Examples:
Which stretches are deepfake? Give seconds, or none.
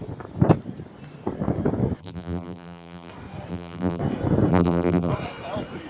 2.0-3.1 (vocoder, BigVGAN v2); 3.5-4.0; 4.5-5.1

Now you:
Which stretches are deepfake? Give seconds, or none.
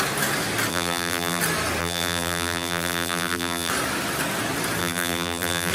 0.7-1.4 (vocoder, BigVGAN v2); 1.8-3.7; 4.8-5.7